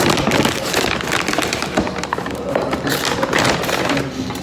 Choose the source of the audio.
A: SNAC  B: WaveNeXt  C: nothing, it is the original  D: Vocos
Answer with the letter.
C